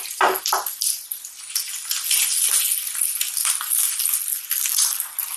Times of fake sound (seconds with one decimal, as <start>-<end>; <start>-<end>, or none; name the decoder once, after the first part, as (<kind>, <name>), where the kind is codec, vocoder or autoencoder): none